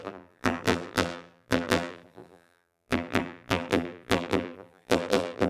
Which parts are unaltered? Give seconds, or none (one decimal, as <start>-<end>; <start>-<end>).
none